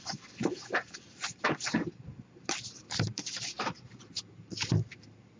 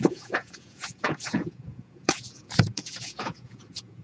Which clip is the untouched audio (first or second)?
first